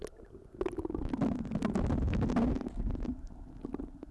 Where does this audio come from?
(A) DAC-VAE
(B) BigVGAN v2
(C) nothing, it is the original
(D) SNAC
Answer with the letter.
C